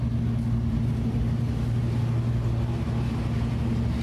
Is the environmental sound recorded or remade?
recorded